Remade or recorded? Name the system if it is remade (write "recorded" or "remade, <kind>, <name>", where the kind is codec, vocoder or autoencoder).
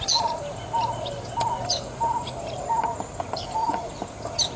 recorded